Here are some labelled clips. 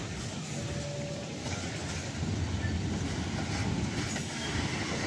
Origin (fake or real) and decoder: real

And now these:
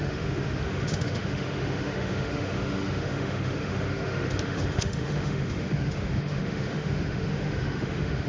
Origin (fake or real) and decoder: fake, autoencoder, DAC-VAE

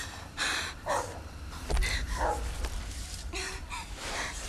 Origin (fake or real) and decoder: fake, vocoder, BigVGAN v2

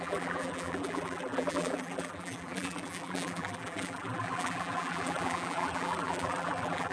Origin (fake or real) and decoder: fake, vocoder, BigVGAN v2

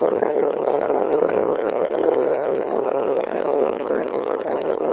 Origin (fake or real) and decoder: fake, codec, SNAC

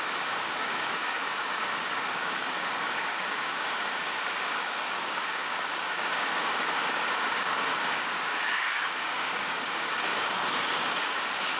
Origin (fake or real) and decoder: fake, codec, DAC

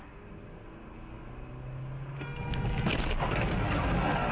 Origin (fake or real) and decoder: real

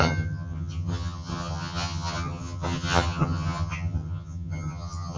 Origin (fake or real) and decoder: fake, vocoder, HiFi-GAN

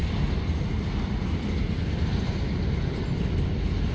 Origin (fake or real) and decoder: real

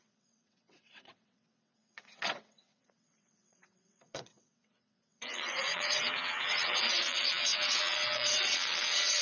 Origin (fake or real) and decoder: fake, vocoder, WaveNeXt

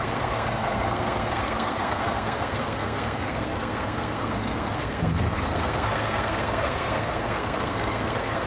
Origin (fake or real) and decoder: fake, codec, SNAC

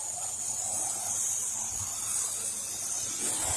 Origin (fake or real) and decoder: real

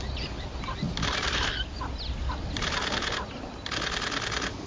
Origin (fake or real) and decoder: real